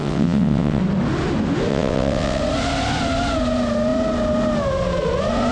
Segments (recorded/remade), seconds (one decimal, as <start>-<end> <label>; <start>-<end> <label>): 0.0-0.8 remade; 0.8-1.7 recorded; 1.7-2.4 remade; 2.4-5.5 recorded